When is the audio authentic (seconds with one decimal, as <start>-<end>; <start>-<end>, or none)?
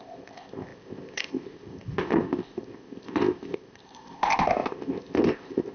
none